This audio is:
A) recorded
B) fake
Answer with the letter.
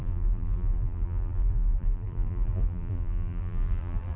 B